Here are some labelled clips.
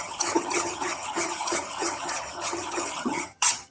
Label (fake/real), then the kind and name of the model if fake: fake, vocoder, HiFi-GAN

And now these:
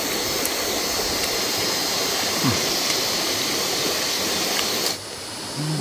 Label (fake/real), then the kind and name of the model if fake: real